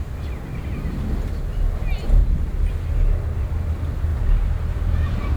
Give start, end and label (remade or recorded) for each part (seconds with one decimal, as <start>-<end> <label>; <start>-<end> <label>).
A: 0.0-0.5 recorded; 0.5-1.0 remade; 1.0-2.2 recorded; 2.2-2.7 remade; 2.7-4.1 recorded; 4.1-5.4 remade